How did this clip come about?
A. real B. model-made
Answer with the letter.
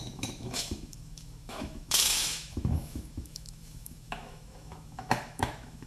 B